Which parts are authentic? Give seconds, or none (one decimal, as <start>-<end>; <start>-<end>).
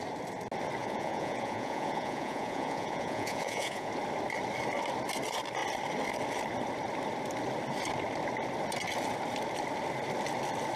0.0-0.8; 3.9-10.8